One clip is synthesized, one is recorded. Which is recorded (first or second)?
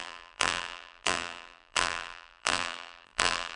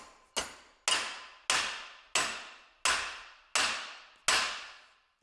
second